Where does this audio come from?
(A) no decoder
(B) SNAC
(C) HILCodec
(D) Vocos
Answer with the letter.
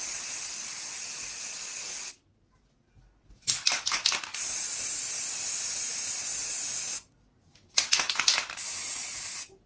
A